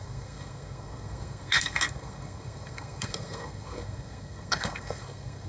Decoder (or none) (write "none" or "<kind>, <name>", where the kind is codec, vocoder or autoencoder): codec, SNAC